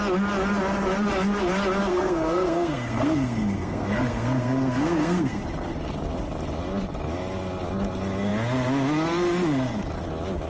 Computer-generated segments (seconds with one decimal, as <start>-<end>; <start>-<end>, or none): 1.9-5.4